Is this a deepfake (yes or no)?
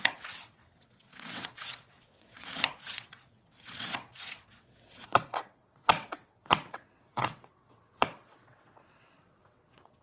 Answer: yes